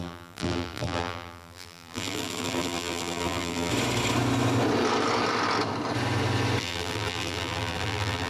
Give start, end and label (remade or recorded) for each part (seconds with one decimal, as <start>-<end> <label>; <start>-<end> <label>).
0.0-3.7 remade; 3.7-6.6 recorded; 6.6-8.3 remade